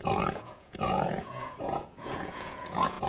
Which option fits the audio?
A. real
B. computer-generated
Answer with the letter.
B